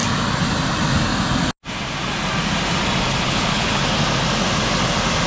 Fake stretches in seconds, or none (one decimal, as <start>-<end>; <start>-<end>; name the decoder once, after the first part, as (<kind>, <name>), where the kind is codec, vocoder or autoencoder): 3.2-3.8 (codec, HILCodec)